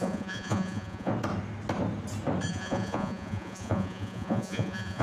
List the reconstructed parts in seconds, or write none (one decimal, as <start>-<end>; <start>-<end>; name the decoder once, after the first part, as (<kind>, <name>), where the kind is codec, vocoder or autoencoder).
0.0-1.1 (vocoder, Vocos); 2.5-5.0